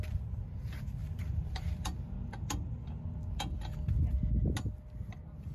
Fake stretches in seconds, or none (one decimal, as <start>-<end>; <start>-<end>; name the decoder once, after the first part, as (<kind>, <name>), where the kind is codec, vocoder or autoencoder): 1.0-3.0 (vocoder, BigVGAN v2)